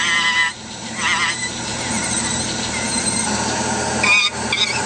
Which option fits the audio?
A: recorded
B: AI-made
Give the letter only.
B